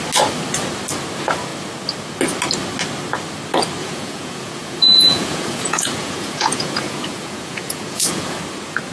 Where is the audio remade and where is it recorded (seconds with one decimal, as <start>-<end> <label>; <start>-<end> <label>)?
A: 0.0-3.8 recorded; 3.8-8.4 remade; 8.4-8.9 recorded